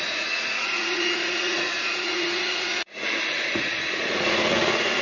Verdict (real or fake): fake